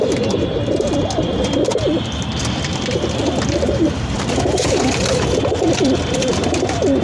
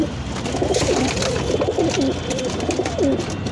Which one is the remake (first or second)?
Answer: first